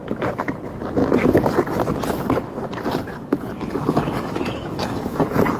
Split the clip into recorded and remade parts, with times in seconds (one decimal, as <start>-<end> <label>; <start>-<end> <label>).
0.0-3.1 recorded; 3.1-5.6 remade